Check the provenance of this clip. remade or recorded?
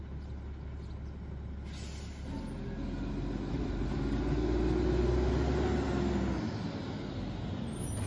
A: recorded